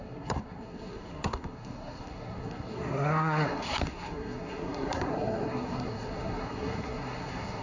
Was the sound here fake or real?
fake